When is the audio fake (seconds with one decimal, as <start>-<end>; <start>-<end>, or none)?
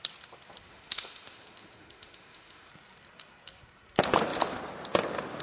0.7-2.7